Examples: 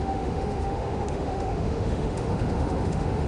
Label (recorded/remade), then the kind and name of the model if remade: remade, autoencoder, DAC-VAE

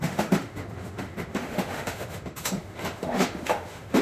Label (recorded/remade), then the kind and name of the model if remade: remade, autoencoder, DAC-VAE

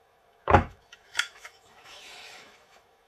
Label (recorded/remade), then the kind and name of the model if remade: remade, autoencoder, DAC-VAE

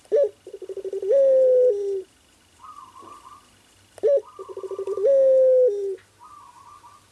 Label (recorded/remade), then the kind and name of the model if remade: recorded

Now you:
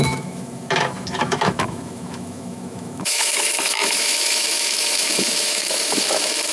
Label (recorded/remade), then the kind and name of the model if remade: remade, autoencoder, DAC-VAE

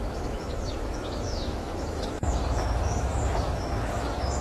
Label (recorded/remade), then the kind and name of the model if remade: remade, autoencoder, DAC-VAE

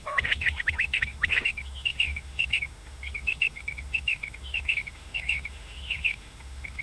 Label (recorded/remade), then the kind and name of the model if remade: remade, autoencoder, DAC-VAE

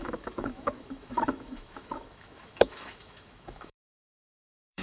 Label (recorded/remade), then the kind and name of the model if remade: remade, autoencoder, DAC-VAE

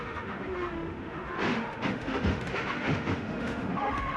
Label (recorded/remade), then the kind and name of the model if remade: remade, autoencoder, DAC-VAE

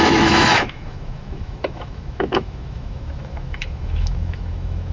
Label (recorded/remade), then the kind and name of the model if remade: remade, autoencoder, DAC-VAE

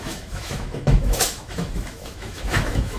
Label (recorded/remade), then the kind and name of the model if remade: remade, autoencoder, DAC-VAE